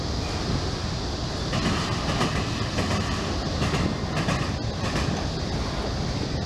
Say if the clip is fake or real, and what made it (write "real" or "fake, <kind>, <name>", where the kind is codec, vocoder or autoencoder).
real